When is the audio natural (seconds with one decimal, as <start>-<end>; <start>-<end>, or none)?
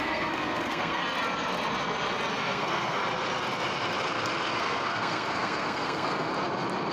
1.0-2.3; 3.0-4.6; 6.3-6.9